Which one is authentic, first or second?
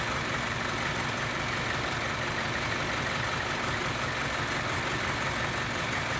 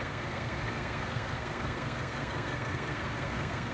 first